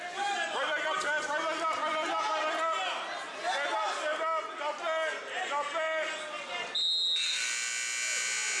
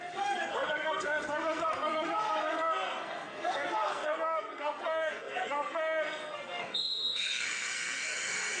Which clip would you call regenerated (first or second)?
second